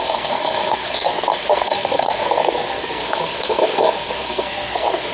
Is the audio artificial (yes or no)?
yes